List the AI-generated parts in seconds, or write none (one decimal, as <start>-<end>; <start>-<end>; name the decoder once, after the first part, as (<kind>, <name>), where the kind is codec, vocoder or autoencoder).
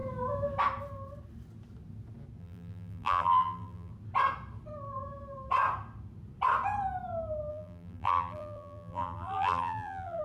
2.4-3.9 (vocoder, BigVGAN v2); 7.5-10.2